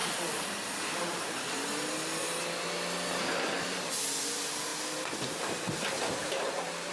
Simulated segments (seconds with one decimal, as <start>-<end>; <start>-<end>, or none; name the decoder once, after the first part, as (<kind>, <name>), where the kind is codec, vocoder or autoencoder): 0.0-1.4 (vocoder, BigVGAN v2); 6.2-6.9